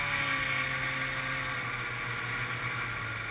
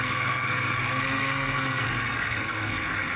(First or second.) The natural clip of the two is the first